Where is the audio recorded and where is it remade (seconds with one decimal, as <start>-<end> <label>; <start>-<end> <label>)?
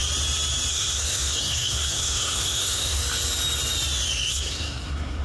0.0-0.7 recorded; 0.7-3.0 remade; 3.0-4.3 recorded; 4.3-5.2 remade